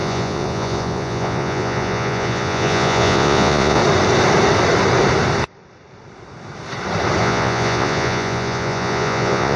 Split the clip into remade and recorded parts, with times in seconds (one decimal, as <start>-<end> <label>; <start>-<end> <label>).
0.0-3.8 remade; 3.8-7.2 recorded; 7.2-9.6 remade